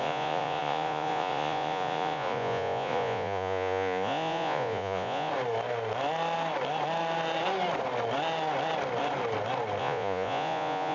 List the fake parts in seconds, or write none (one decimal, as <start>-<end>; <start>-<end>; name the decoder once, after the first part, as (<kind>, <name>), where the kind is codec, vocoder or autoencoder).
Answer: 0.0-5.3 (vocoder, Vocos); 9.8-10.9